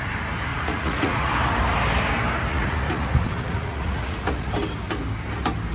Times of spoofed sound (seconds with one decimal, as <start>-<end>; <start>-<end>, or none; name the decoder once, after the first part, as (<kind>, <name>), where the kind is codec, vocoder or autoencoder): 0.5-1.3 (vocoder, Vocos); 2.5-4.5